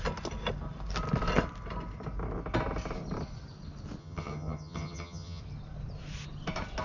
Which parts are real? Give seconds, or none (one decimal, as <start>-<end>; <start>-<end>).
0.0-4.0; 5.4-6.8